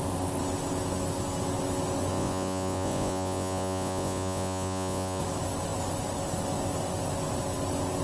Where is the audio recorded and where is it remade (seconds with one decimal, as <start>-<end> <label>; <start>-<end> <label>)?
0.0-2.1 recorded; 2.1-5.2 remade; 5.2-8.0 recorded